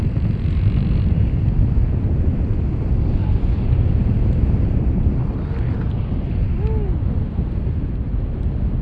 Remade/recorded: recorded